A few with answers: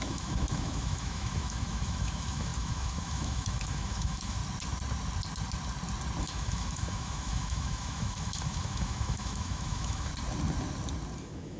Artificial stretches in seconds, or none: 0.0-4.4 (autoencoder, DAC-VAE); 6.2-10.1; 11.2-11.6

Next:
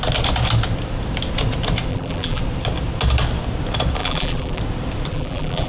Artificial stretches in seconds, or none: 1.9-2.4 (vocoder, BigVGAN v2); 4.0-4.6; 5.1-5.7

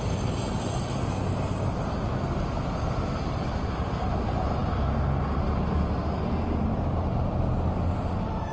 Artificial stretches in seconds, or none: none

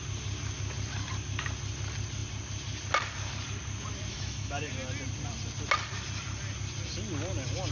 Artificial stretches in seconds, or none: 4.1-4.7 (autoencoder, DAC-VAE)

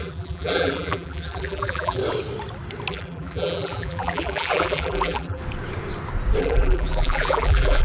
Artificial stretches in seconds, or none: 0.0-2.0 (vocoder, BigVGAN v2); 2.9-5.4; 6.4-7.8

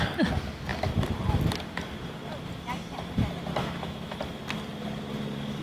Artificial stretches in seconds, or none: 3.6-4.2 (autoencoder, DAC-VAE)